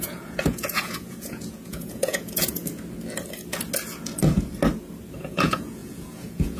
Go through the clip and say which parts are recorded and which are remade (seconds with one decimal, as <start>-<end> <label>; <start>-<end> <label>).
0.0-2.6 remade; 2.6-5.2 recorded; 5.2-6.6 remade